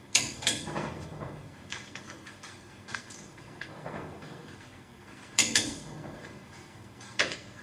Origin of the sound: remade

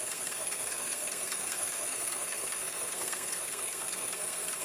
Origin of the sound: remade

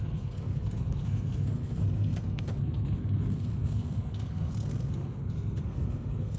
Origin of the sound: remade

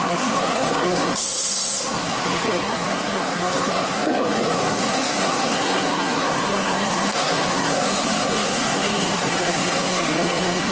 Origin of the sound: remade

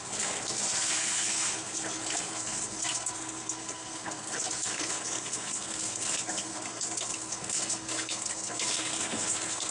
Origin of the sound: remade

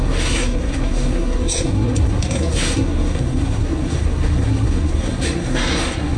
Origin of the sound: remade